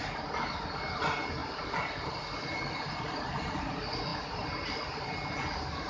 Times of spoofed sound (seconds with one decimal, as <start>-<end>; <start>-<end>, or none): 1.4-2.2